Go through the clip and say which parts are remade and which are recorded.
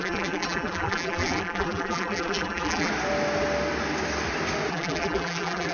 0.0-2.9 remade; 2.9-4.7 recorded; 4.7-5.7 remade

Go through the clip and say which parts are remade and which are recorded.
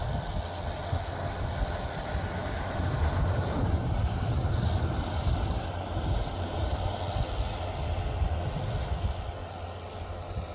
0.0-2.4 recorded; 2.4-7.0 remade; 7.0-10.5 recorded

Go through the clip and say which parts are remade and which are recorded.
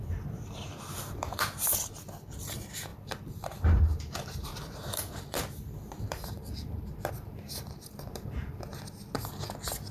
0.0-1.7 remade; 1.7-2.5 recorded; 2.5-8.7 remade; 8.7-9.9 recorded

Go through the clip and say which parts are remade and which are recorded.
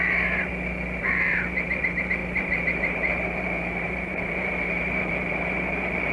0.0-0.5 remade; 0.5-1.0 recorded; 1.0-6.1 remade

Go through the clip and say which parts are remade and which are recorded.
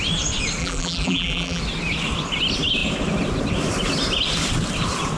0.0-0.6 recorded; 0.6-1.6 remade; 1.6-5.2 recorded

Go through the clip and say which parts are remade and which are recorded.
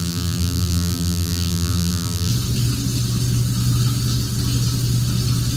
0.0-2.3 remade; 2.3-5.6 recorded